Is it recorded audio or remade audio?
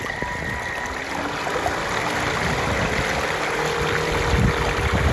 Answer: recorded